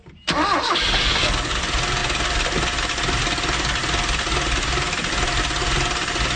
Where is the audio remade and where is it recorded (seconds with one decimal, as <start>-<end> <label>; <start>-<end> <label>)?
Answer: 0.0-0.7 recorded; 0.7-1.6 remade; 1.6-6.4 recorded